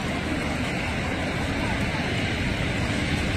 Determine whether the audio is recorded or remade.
recorded